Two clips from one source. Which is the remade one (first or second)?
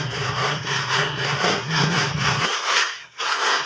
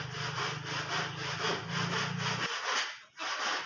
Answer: first